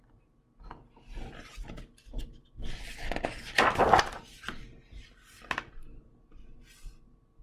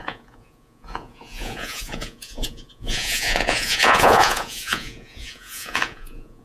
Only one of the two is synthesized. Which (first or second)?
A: second